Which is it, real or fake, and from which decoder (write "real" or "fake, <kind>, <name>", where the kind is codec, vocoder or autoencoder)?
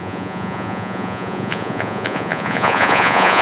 fake, vocoder, Vocos